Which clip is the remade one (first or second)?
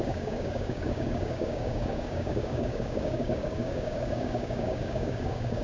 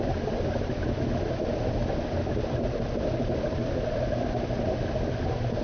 first